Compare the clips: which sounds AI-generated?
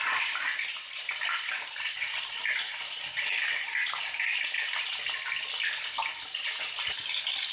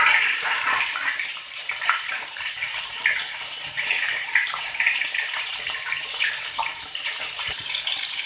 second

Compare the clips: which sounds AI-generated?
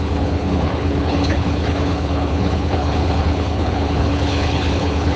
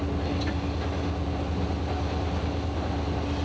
first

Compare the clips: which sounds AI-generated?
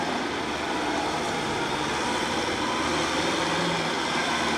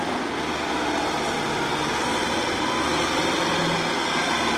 first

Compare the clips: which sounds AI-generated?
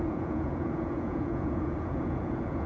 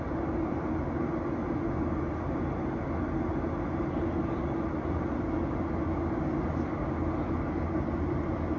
first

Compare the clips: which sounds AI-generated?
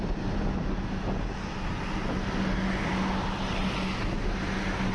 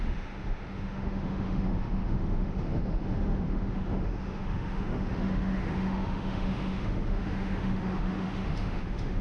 second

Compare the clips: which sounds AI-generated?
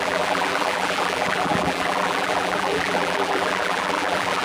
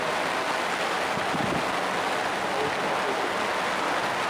first